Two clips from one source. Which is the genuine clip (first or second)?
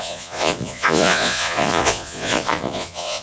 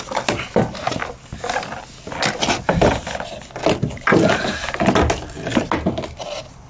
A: second